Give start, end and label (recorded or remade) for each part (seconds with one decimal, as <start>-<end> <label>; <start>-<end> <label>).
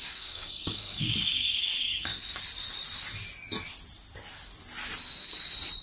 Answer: 0.0-2.1 remade; 2.1-5.8 recorded